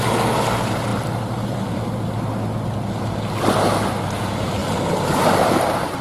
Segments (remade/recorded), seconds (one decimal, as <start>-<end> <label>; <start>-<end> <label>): 0.0-4.6 recorded; 4.6-5.6 remade; 5.6-6.0 recorded